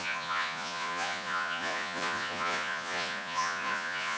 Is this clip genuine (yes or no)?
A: no